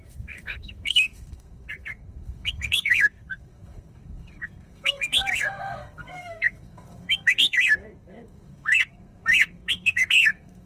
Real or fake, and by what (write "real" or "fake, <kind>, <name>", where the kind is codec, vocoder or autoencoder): fake, codec, SNAC